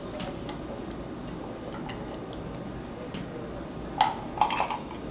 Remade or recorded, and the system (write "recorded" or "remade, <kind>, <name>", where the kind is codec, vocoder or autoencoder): recorded